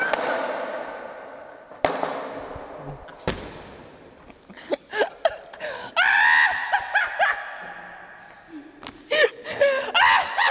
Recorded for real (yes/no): yes